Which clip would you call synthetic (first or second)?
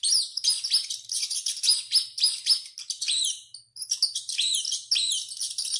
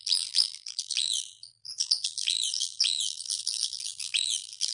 second